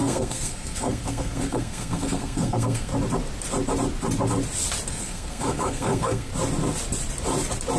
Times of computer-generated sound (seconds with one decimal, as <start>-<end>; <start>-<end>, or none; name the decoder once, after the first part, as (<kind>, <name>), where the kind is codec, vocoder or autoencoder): 0.0-2.9 (codec, SNAC); 4.9-6.3